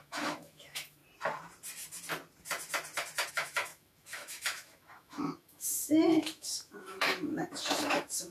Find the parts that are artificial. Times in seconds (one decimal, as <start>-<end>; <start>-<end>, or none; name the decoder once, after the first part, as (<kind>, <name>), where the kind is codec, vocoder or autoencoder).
0.0-1.0 (autoencoder, DAC-VAE); 3.3-8.3